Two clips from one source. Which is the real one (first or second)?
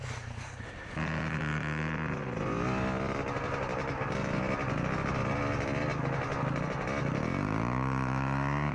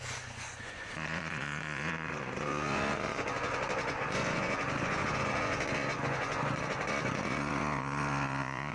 first